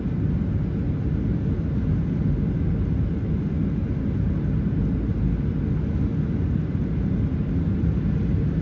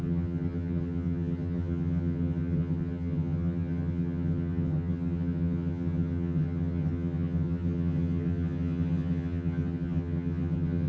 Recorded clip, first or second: first